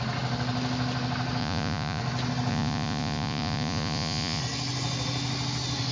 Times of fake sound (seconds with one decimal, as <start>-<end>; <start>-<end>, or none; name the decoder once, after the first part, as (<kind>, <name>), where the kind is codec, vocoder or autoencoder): 1.4-2.0 (vocoder, Vocos); 2.5-4.4